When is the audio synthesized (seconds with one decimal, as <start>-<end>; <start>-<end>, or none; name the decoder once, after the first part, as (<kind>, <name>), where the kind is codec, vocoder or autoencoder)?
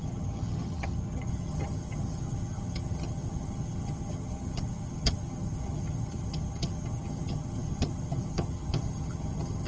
0.0-9.7 (vocoder, HiFi-GAN)